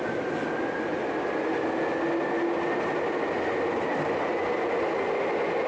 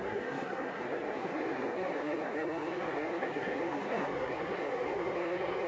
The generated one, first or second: second